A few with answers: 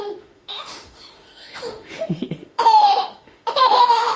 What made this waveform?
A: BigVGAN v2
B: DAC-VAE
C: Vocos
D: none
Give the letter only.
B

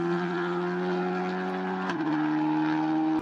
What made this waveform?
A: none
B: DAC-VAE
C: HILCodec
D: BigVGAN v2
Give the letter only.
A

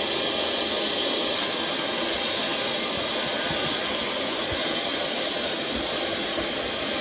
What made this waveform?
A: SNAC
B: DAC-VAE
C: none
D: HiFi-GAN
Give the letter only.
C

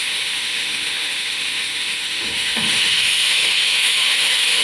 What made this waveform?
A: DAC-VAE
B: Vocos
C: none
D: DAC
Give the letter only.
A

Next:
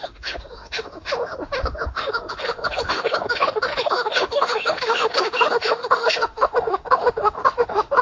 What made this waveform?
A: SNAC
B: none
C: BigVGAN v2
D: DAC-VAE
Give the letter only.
D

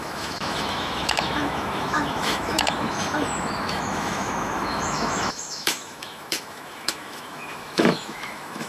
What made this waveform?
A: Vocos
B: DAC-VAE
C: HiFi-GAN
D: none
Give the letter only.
B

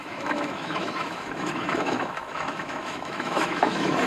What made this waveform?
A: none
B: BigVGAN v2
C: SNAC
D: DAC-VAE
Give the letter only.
D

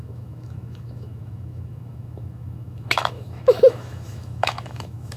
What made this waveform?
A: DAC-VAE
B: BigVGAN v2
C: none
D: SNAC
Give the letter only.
A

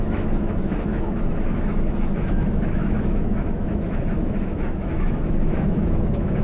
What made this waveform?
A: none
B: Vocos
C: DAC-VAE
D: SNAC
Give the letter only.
C